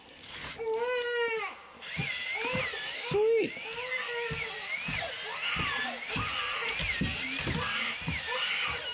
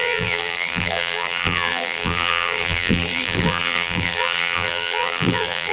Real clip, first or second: first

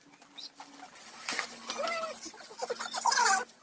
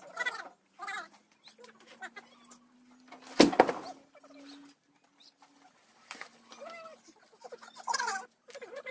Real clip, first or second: second